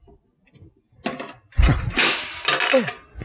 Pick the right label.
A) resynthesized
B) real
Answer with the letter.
B